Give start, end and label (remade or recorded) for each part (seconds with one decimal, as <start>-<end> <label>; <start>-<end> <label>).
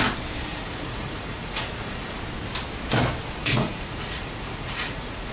0.0-0.5 recorded; 0.5-2.2 remade; 2.2-3.4 recorded; 3.4-5.3 remade